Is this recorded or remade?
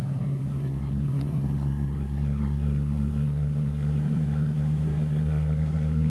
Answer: remade